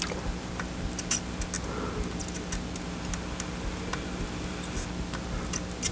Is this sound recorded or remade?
recorded